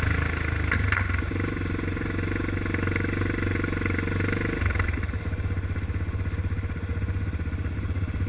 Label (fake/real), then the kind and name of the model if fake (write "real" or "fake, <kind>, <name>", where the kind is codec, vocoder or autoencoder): real